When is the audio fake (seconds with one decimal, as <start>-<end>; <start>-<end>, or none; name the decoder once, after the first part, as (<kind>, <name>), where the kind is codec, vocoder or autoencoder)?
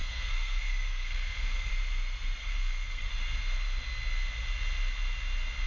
0.0-1.7 (codec, SNAC); 2.4-3.1